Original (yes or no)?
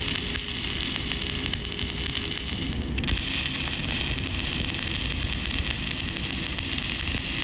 yes